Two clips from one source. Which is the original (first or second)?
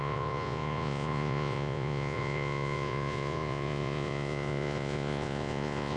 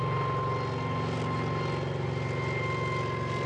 second